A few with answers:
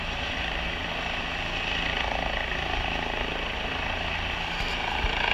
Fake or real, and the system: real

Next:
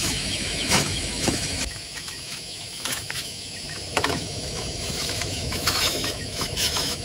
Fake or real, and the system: fake, autoencoder, DAC-VAE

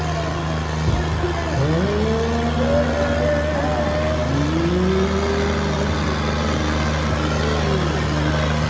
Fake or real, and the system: real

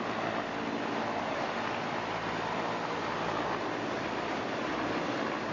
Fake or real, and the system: real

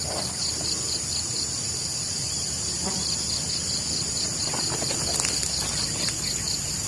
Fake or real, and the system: real